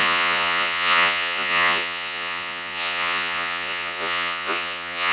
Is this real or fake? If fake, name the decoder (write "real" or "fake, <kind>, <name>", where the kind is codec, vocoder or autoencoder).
fake, vocoder, Vocos